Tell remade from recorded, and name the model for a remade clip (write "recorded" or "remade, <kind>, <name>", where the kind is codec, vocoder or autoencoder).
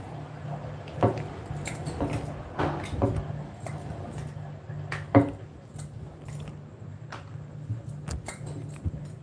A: recorded